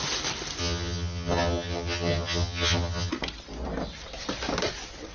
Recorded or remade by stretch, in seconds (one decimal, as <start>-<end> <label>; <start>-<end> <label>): 0.0-0.6 recorded; 0.6-3.1 remade; 3.1-5.1 recorded